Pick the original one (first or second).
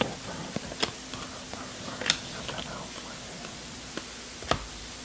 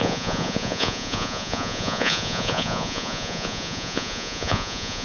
first